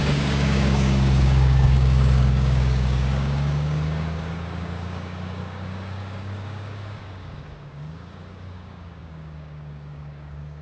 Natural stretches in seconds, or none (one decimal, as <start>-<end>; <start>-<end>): none